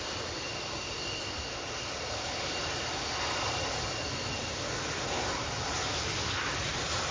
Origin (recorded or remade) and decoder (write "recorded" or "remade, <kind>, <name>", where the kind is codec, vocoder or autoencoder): recorded